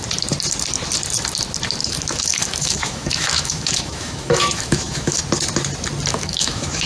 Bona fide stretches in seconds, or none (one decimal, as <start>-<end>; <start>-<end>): 0.0-1.8; 5.2-6.1